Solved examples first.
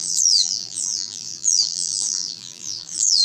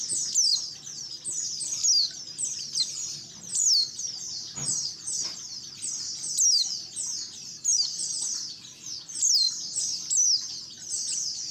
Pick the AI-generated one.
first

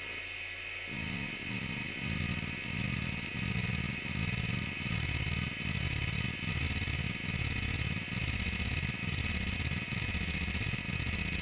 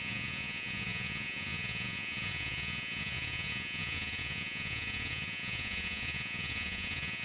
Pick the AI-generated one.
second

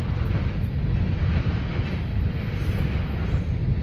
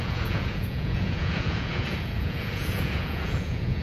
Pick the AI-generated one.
second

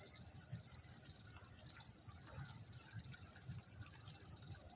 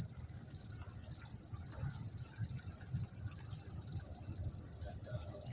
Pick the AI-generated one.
first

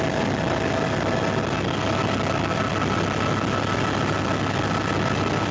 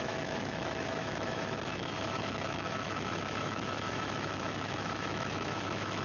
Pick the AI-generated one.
second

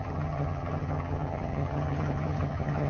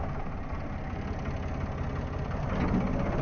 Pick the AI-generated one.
first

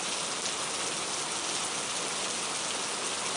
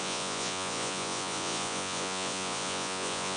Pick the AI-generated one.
second